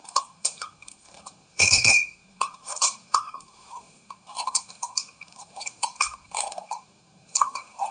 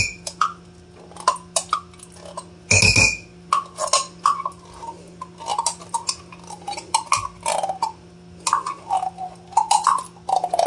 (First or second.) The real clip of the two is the second